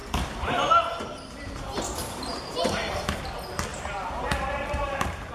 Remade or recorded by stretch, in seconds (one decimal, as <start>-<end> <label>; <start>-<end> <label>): 0.0-3.2 remade; 3.2-3.7 recorded; 3.7-5.3 remade